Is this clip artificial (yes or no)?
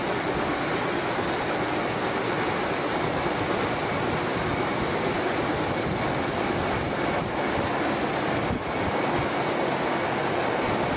no